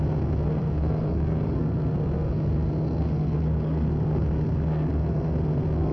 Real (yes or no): no